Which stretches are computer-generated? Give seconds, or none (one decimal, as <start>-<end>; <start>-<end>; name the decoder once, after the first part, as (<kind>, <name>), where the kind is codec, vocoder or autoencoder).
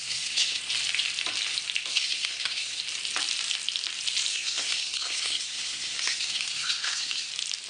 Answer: 0.0-0.6 (codec, SNAC); 1.9-2.8; 4.3-7.3